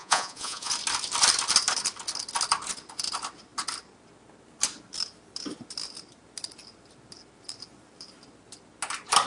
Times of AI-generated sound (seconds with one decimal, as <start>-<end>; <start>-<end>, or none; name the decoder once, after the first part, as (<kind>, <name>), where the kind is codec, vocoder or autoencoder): 0.0-0.7 (vocoder, Vocos)

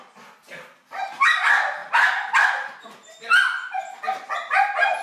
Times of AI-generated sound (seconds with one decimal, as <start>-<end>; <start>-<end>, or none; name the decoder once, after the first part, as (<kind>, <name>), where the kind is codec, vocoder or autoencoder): none

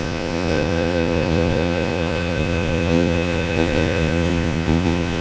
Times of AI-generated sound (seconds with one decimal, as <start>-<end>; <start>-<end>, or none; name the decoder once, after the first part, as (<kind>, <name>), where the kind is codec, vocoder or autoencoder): 0.0-5.2 (vocoder, Vocos)

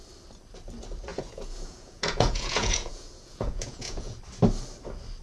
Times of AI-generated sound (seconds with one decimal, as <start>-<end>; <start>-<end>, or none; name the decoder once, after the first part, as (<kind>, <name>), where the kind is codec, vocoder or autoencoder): 1.1-4.2 (vocoder, Vocos)